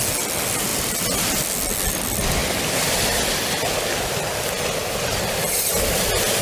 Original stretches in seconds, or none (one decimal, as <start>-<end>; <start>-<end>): 0.0-6.4